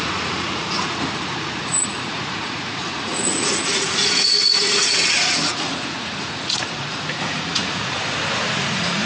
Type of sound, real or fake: fake